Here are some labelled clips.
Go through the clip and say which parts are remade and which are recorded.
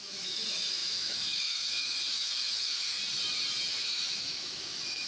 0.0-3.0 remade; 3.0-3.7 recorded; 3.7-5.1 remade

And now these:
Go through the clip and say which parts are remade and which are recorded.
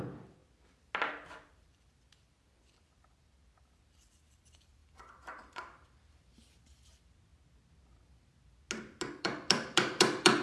0.0-0.4 remade; 0.4-1.5 recorded; 1.5-7.3 remade; 7.3-9.2 recorded; 9.2-10.4 remade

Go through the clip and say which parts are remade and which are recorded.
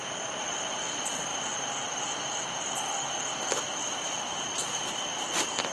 0.0-5.7 recorded